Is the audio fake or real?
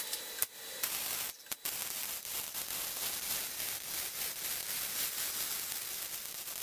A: real